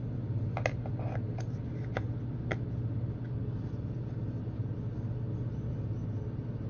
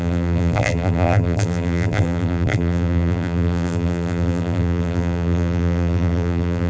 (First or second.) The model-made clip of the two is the second